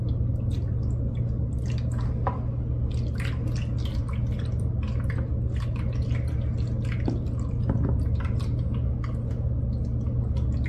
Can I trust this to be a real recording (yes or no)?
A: yes